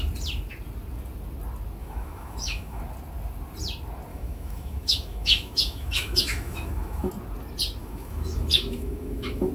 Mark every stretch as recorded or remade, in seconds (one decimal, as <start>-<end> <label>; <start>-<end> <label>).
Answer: 0.0-1.8 recorded; 1.8-2.8 remade; 2.8-4.1 recorded; 4.1-7.1 remade; 7.1-7.8 recorded; 7.8-9.5 remade